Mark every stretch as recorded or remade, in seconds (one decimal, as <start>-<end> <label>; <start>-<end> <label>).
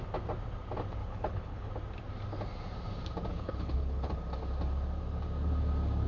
0.0-1.0 recorded; 1.0-1.7 remade; 1.7-3.3 recorded; 3.3-4.1 remade; 4.1-6.1 recorded